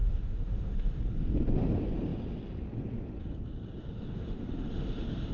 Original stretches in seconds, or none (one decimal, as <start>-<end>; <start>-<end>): 1.0-3.8